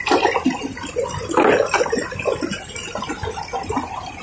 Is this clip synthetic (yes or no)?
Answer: no